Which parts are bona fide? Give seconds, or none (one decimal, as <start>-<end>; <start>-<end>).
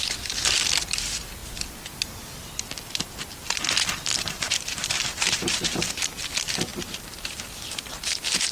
0.0-4.1; 6.1-6.7; 7.9-8.5